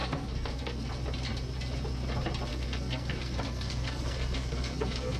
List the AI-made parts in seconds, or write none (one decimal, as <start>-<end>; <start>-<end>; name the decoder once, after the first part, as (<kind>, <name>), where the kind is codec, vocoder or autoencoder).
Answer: 0.0-0.9 (codec, SNAC); 2.5-5.2